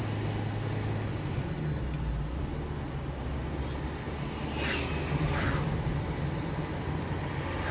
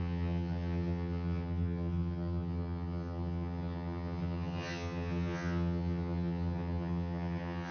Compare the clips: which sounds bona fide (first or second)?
first